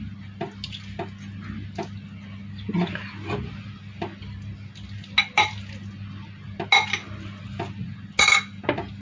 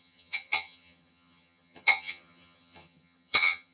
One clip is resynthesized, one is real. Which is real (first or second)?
first